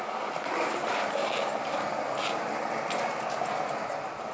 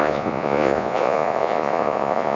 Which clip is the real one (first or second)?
first